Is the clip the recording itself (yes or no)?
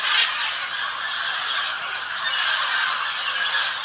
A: yes